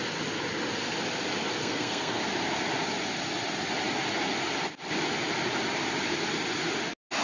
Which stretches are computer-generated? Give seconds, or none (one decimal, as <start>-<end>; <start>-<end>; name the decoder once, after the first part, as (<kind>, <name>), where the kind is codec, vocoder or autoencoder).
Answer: 1.6-2.2 (codec, SNAC)